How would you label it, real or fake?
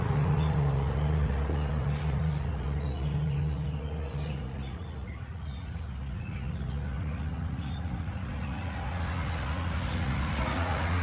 fake